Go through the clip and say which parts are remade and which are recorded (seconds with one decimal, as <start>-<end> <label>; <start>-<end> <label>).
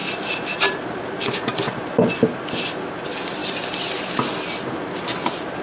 0.0-1.8 remade; 1.8-5.6 recorded